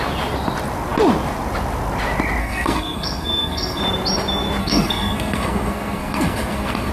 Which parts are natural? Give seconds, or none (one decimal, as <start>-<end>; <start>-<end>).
0.0-2.4; 3.8-4.6